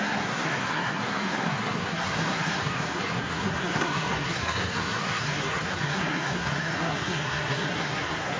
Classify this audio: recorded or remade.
remade